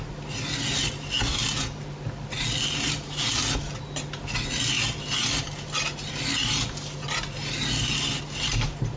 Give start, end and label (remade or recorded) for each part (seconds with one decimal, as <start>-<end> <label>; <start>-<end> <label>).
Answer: 0.0-9.0 recorded